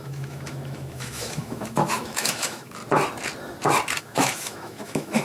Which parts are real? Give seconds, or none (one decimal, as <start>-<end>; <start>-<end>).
2.8-4.0